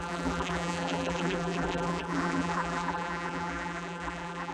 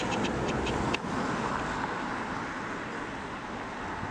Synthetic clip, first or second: first